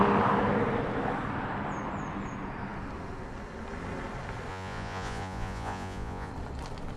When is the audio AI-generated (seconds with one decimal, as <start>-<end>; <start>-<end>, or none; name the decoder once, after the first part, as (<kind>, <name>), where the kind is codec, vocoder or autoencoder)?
4.5-6.3 (vocoder, Vocos)